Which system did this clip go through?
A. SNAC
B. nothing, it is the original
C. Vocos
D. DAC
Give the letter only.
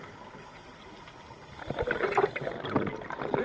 B